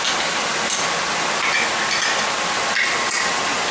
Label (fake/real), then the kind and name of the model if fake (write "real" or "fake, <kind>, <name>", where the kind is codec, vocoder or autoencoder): real